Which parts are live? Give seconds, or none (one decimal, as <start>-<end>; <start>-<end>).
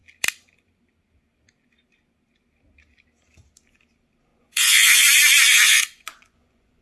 0.0-4.3